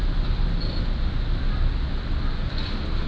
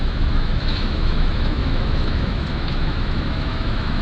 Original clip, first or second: first